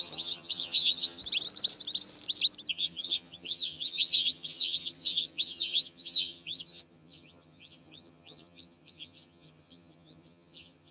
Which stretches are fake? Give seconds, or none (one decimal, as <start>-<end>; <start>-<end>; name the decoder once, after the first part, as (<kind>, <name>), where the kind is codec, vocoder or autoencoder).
0.0-1.2 (vocoder, HiFi-GAN); 2.7-10.9